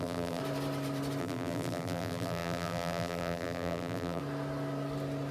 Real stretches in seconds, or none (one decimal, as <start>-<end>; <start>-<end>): 0.4-1.2; 4.2-5.3